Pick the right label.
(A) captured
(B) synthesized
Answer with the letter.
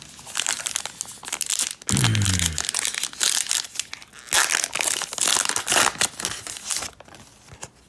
A